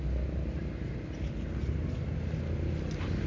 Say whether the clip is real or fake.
real